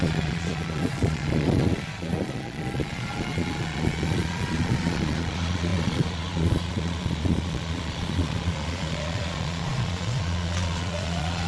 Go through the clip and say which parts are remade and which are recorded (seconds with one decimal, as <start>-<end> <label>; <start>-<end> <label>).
0.0-11.5 remade